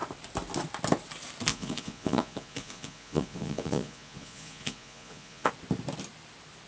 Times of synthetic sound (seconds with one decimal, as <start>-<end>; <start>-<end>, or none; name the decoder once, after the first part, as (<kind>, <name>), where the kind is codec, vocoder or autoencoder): 1.5-5.5 (vocoder, Vocos)